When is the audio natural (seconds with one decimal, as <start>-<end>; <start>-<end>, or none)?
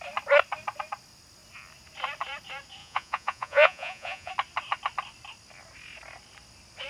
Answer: 0.0-2.8; 4.3-6.9